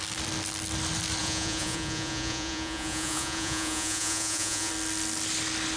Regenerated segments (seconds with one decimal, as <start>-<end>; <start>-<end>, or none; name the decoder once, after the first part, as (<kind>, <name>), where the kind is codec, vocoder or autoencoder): 1.2-4.7 (vocoder, Vocos)